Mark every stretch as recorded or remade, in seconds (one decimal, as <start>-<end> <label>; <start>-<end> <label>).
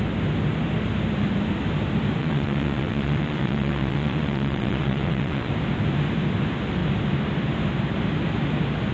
0.0-2.2 recorded; 2.2-5.5 remade; 5.5-8.9 recorded